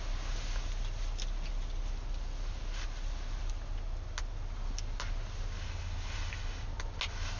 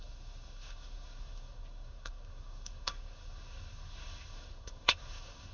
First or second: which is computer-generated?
second